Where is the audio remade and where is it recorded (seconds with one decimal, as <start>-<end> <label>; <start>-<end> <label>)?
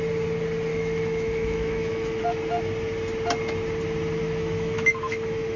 0.0-0.7 recorded; 0.7-2.2 remade; 2.2-4.2 recorded; 4.2-5.6 remade